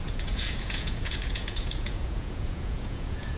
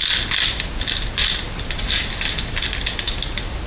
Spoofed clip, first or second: first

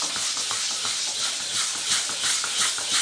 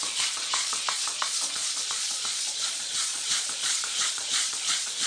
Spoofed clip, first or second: second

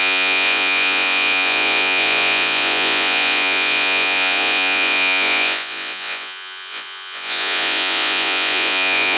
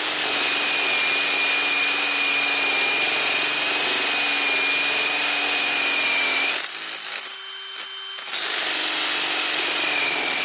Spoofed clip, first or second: first